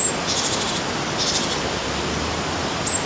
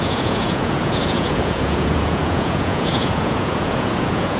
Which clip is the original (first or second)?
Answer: first